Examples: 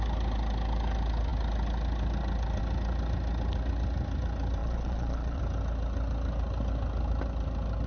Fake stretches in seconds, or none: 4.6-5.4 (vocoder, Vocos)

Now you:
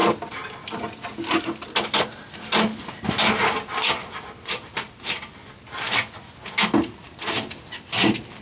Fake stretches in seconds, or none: none

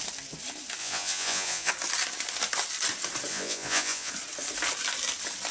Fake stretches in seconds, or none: 0.8-1.7 (vocoder, Vocos); 3.3-4.1

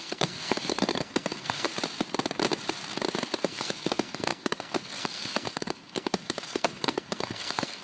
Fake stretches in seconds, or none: 0.0-1.7 (codec, SNAC); 3.4-7.8

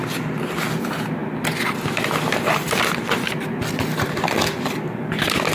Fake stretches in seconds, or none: none

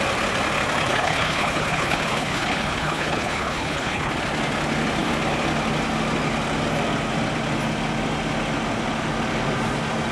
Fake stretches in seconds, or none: 0.9-4.1 (codec, HILCodec)

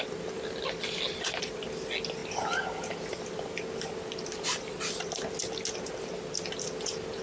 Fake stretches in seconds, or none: none